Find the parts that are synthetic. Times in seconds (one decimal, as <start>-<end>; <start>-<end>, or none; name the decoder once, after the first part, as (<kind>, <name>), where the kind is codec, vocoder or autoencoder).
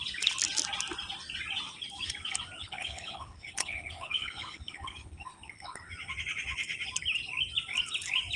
2.6-5.9 (codec, HILCodec)